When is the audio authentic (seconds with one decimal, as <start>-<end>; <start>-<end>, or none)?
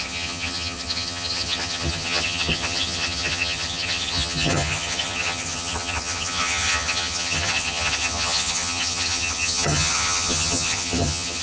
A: none